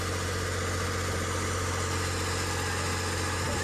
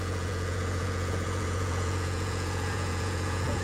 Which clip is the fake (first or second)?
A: second